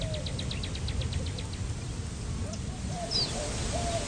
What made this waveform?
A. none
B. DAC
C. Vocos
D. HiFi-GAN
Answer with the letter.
A